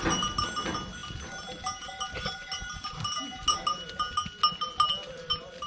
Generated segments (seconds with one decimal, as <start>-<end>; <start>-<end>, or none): none